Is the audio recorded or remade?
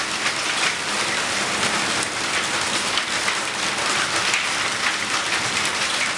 recorded